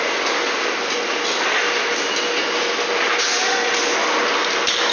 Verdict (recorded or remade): recorded